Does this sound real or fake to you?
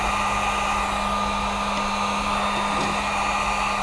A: real